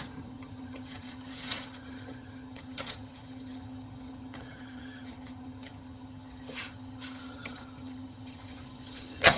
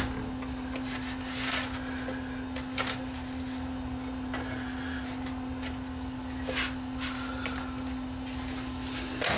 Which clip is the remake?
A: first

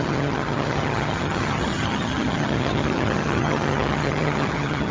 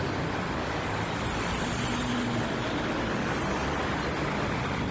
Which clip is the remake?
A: first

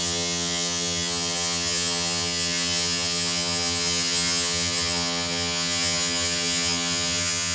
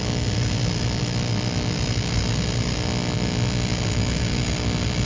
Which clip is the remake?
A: first